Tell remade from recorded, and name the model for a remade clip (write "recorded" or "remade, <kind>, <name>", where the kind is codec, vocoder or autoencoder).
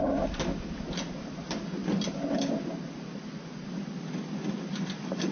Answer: recorded